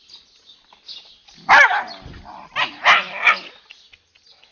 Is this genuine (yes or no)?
yes